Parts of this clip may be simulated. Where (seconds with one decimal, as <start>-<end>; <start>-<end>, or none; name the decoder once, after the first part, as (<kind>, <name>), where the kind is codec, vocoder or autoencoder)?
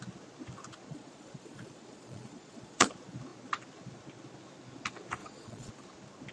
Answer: 0.9-2.9 (vocoder, Vocos); 5.2-5.7